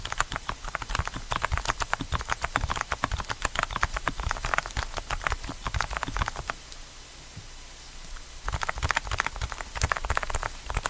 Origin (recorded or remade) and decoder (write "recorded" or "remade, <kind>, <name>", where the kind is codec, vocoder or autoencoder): recorded